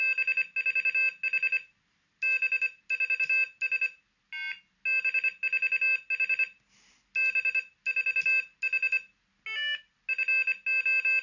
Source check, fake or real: real